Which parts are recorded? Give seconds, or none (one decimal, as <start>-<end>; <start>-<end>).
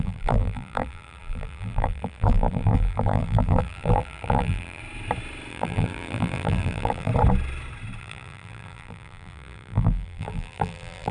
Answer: 4.8-5.5; 7.1-8.0